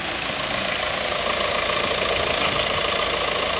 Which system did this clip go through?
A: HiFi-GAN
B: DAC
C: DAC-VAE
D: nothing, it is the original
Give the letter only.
D